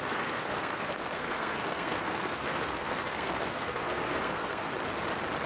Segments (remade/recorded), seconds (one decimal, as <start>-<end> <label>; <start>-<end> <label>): 0.0-4.7 remade; 4.7-5.5 recorded